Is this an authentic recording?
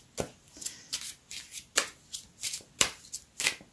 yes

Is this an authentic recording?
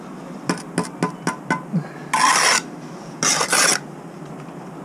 yes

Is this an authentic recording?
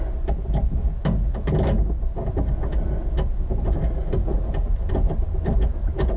yes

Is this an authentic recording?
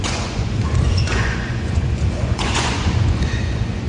no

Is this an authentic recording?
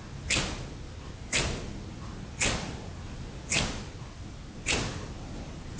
yes